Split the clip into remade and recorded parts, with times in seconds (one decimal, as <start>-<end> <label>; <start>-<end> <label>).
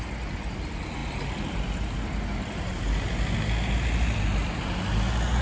0.0-5.4 recorded